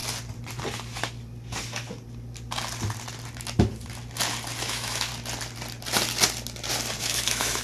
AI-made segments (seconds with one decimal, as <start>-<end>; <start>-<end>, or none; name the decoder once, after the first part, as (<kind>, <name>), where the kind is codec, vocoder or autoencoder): 4.6-5.1 (autoencoder, DAC-VAE); 7.0-7.6